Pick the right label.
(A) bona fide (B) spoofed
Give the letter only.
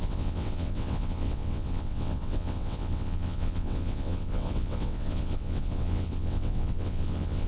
B